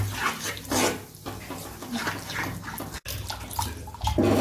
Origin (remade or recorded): recorded